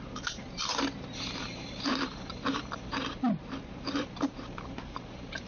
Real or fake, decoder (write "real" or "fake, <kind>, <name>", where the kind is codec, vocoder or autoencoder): fake, vocoder, BigVGAN v2